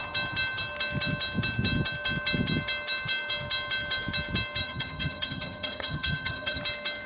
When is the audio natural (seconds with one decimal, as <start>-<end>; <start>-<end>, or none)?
0.0-4.6; 6.6-7.1